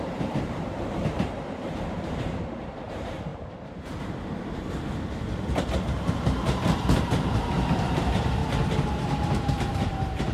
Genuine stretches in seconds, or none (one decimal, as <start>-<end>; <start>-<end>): 3.3-6.1; 8.4-8.9